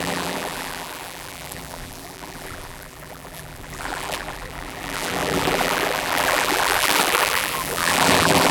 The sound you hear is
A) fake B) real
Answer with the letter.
A